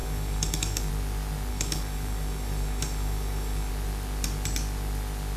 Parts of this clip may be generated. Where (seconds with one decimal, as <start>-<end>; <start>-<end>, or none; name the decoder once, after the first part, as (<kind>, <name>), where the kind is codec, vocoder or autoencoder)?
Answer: 0.0-0.9 (codec, DAC); 1.5-3.7